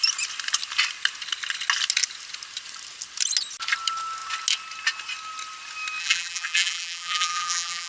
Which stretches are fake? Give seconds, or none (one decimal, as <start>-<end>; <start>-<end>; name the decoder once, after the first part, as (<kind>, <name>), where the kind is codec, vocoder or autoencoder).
6.0-7.9 (vocoder, BigVGAN v2)